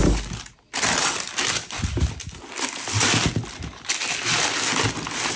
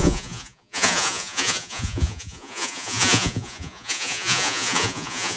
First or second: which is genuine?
first